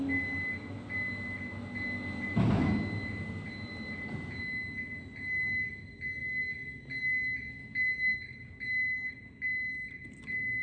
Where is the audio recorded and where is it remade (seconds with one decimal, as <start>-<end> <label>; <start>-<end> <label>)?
0.0-10.6 recorded